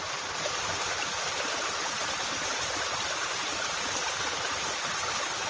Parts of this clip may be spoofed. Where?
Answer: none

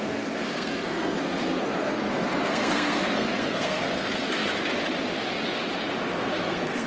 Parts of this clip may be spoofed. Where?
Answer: 0.0-4.5 (codec, SNAC); 6.2-6.9

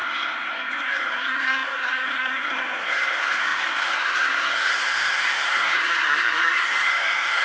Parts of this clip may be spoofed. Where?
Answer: 0.0-7.4 (codec, SNAC)

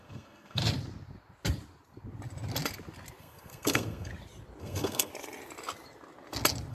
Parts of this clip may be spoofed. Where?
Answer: 0.0-0.6 (codec, SNAC); 3.2-4.1; 4.6-5.1

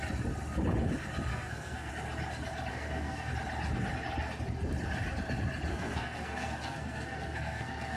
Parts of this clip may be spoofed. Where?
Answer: 1.3-1.9 (codec, SNAC); 2.7-3.3; 5.7-8.0

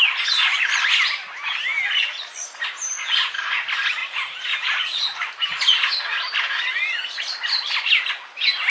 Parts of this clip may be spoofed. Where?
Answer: 4.0-5.6 (vocoder, BigVGAN v2)